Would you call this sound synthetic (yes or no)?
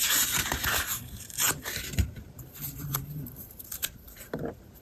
yes